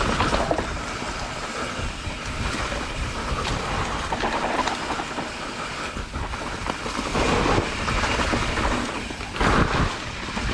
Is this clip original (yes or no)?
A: yes